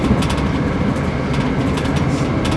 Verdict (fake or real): real